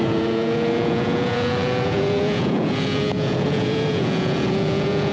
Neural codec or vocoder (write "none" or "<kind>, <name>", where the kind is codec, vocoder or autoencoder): vocoder, Vocos